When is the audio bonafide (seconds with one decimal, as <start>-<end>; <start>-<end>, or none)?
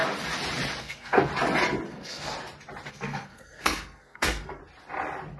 0.0-0.8; 1.3-1.9; 2.3-2.9; 4.6-5.4